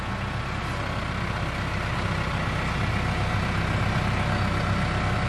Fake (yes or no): no